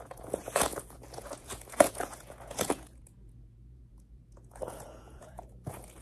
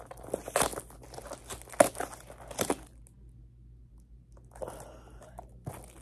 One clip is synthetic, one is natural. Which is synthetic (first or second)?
first